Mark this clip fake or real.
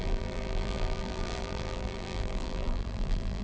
fake